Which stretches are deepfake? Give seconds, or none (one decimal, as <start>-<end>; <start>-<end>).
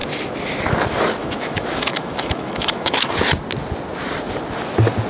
1.2-3.1